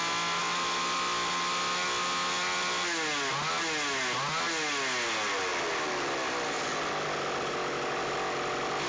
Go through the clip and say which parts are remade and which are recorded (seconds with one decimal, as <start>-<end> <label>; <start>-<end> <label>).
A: 0.0-8.9 recorded